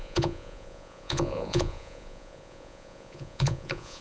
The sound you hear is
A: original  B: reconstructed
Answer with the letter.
B